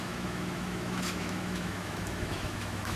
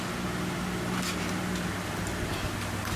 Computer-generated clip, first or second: first